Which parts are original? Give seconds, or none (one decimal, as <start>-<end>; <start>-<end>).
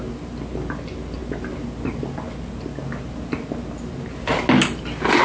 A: 0.0-5.2